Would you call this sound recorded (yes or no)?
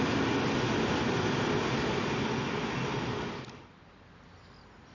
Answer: yes